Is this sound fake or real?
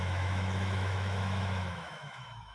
fake